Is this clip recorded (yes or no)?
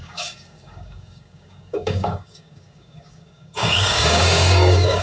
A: no